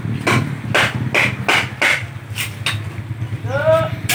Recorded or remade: recorded